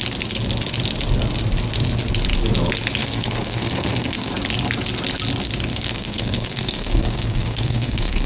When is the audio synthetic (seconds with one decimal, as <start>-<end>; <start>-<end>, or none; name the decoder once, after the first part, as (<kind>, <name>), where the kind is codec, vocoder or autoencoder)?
3.0-4.3 (codec, SNAC); 5.7-8.3